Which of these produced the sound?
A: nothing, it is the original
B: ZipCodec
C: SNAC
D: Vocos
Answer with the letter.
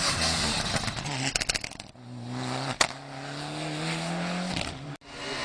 A